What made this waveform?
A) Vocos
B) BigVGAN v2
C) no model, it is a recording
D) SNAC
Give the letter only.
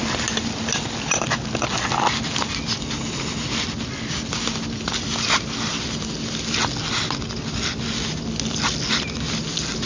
C